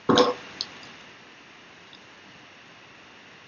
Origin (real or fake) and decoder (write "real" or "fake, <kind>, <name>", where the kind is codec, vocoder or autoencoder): real